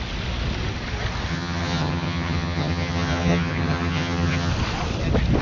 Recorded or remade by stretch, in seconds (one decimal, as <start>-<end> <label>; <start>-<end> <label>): 0.0-1.3 recorded; 1.3-4.5 remade; 4.5-5.4 recorded